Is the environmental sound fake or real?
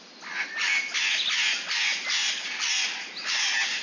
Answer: real